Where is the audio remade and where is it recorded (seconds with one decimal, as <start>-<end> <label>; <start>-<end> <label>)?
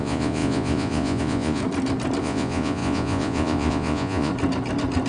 0.0-1.6 remade; 1.6-2.2 recorded; 2.2-4.3 remade; 4.3-5.1 recorded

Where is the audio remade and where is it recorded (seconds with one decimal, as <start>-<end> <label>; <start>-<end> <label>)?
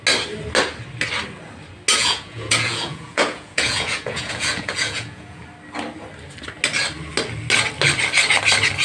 0.0-1.9 recorded; 1.9-5.4 remade; 5.4-8.8 recorded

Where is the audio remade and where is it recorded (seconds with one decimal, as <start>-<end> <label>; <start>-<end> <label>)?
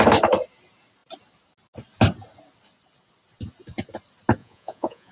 0.0-4.4 recorded; 4.4-5.1 remade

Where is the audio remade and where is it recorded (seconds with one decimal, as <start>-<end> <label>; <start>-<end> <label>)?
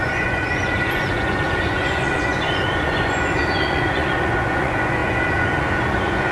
0.0-6.3 remade